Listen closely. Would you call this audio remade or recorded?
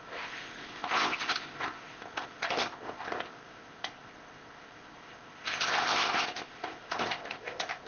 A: remade